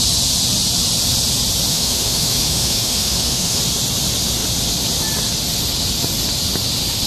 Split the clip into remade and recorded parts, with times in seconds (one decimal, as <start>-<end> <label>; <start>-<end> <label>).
0.0-1.7 recorded; 1.7-3.6 remade; 3.6-7.1 recorded